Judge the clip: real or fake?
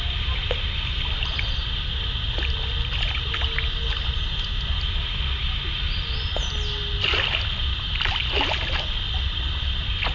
real